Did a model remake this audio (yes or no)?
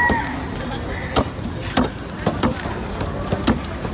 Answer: no